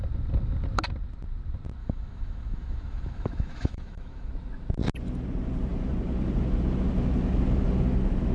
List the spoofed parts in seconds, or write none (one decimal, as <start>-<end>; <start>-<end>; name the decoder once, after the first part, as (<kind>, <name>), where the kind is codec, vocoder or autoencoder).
1.8-4.3 (autoencoder, DAC-VAE)